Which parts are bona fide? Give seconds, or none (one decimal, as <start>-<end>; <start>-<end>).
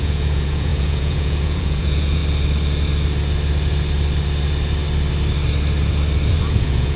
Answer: 2.2-6.4